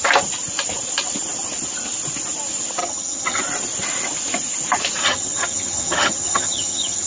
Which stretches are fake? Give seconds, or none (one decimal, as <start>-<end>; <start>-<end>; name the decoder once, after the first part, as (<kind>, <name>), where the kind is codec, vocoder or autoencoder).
2.8-3.4 (vocoder, HiFi-GAN); 5.0-7.1